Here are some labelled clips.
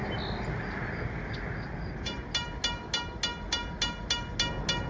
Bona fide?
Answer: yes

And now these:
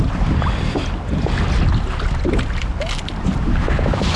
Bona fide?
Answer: yes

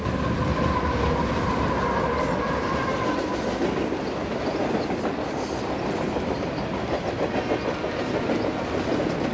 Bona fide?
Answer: yes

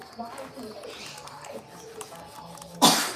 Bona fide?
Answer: yes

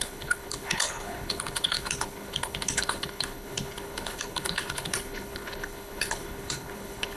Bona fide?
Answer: no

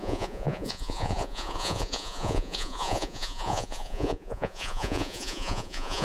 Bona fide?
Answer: no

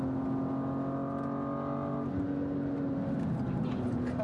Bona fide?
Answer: yes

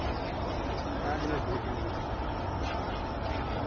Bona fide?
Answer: yes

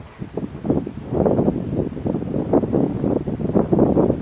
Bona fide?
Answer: yes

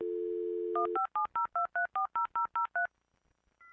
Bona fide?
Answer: yes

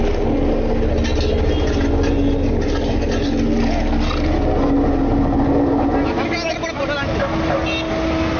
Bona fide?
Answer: yes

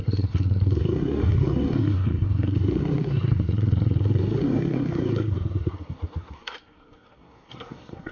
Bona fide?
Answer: no